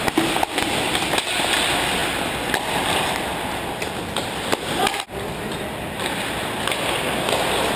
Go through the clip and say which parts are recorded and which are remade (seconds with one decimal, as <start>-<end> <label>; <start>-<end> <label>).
0.0-7.8 recorded